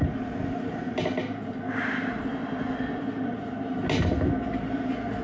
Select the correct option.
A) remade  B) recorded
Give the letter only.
B